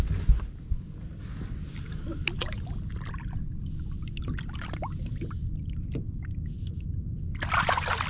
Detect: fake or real real